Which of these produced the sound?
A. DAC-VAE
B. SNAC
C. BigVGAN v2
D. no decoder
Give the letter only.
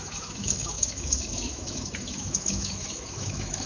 A